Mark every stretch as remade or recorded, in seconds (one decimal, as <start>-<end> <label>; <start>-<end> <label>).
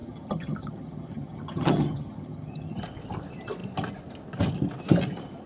0.0-2.8 remade; 2.8-5.5 recorded